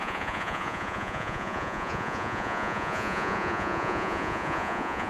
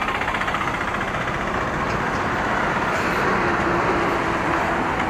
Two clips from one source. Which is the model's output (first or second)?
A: first